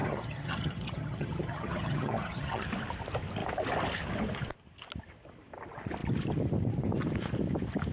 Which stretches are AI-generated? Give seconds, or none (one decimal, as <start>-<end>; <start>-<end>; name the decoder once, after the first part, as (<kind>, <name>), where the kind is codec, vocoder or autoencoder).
0.0-2.7 (vocoder, HiFi-GAN)